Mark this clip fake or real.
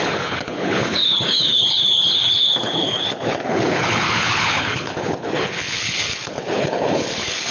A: fake